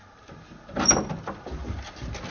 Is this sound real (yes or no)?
yes